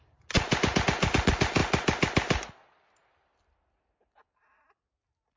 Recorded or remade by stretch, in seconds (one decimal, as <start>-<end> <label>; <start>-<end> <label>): 0.0-5.4 recorded